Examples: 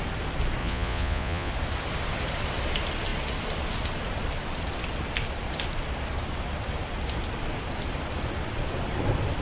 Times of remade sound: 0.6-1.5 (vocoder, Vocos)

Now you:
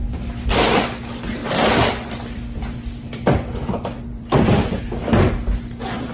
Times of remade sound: 1.4-4.8 (vocoder, BigVGAN v2)

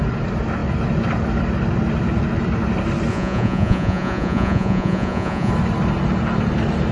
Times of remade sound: 3.1-5.5 (vocoder, Vocos)

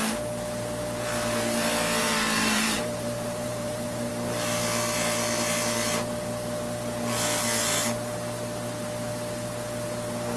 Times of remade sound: 2.0-4.1 (vocoder, BigVGAN v2)